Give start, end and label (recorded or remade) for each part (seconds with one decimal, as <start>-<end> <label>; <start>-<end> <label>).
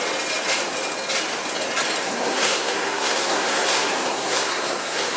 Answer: 0.0-2.0 recorded; 2.0-5.2 remade